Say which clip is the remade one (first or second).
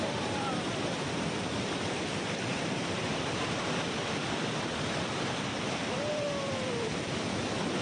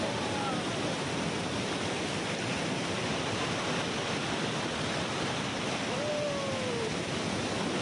first